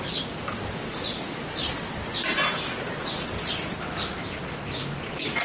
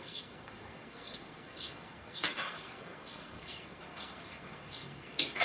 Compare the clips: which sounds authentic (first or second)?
first